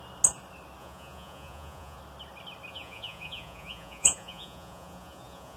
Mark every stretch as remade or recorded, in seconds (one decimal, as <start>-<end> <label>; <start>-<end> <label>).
0.0-0.8 recorded; 0.8-2.0 remade; 2.0-2.7 recorded; 2.7-5.6 remade